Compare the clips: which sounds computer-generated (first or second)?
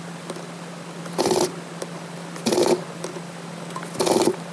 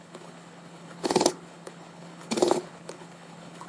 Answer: second